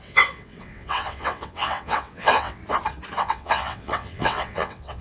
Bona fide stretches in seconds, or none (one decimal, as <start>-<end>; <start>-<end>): 2.6-3.2